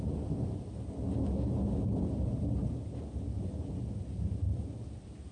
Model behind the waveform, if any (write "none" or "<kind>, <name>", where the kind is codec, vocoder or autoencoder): none